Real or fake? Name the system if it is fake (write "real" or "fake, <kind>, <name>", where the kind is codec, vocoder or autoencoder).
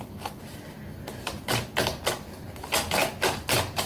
real